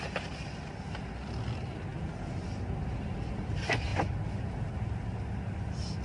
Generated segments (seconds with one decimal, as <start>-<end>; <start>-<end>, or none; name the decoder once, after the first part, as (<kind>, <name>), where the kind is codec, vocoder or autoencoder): none